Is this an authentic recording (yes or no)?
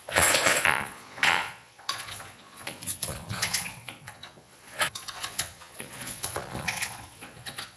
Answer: no